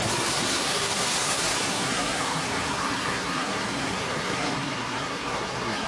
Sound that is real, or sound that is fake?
fake